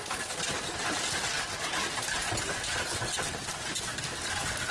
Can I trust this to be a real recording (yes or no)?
yes